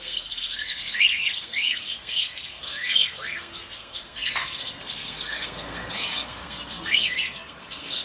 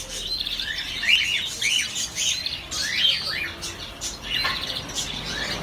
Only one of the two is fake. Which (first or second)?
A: first